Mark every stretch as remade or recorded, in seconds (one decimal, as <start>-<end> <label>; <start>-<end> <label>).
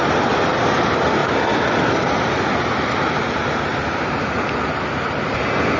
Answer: 0.0-5.8 recorded